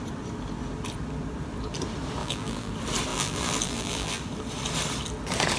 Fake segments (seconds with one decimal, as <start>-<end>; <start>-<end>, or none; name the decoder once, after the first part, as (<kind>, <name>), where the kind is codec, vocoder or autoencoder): 2.2-2.7 (vocoder, BigVGAN v2); 3.1-4.2